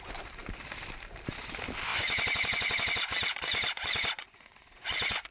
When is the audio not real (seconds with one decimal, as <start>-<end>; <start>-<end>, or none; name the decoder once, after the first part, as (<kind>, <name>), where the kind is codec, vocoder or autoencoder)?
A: 1.9-5.3 (vocoder, Vocos)